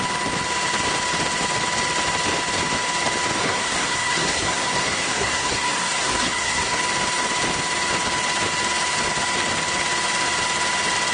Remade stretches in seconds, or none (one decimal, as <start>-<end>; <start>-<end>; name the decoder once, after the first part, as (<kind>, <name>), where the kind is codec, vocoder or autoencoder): 3.4-6.8 (codec, SNAC)